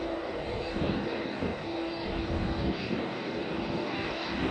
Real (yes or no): no